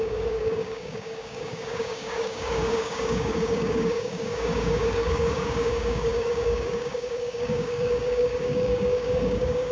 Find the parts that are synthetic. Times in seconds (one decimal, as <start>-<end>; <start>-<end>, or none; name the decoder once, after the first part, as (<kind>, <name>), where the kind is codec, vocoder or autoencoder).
0.0-9.7 (codec, DAC)